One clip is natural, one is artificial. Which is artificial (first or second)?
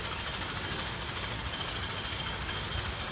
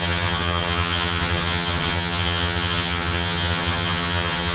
second